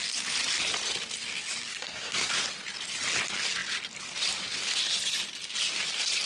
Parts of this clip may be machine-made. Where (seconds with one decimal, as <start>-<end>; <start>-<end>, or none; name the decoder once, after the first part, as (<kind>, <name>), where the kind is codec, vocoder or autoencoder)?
1.7-2.3 (codec, SNAC)

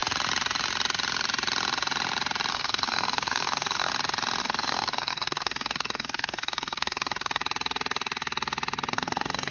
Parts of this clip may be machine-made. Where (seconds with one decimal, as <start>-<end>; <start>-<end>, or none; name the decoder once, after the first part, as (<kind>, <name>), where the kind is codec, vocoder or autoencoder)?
2.5-3.9 (codec, SNAC); 4.4-7.4; 8.9-9.5

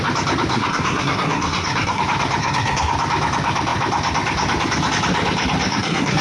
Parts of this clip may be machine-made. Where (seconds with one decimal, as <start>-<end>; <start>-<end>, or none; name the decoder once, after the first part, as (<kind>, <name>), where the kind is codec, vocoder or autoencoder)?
0.5-2.0 (codec, SNAC); 2.4-2.9; 5.7-6.2

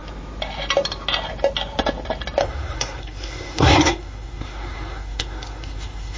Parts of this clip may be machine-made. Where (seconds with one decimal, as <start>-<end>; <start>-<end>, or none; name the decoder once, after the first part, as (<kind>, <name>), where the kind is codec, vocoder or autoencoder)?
2.4-6.2 (codec, SNAC)

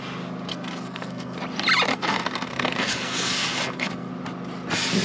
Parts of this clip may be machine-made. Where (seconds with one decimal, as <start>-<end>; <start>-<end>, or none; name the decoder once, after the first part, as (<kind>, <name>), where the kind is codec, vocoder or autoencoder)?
0.5-1.4 (codec, SNAC); 1.9-4.1

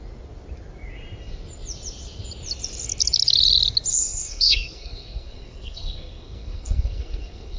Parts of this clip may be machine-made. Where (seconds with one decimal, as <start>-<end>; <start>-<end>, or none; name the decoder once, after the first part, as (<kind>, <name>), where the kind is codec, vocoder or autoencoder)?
3.9-7.6 (codec, SNAC)

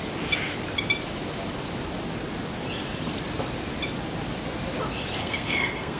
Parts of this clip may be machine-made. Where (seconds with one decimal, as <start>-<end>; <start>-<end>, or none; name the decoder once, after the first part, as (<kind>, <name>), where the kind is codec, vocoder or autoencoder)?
5.2-6.0 (codec, SNAC)

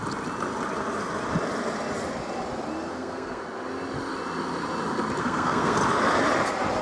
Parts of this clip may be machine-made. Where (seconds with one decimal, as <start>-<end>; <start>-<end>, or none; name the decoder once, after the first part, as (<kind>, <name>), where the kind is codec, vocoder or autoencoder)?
2.9-3.4 (codec, SNAC); 5.2-5.8